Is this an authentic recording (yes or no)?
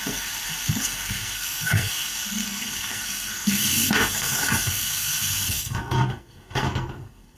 no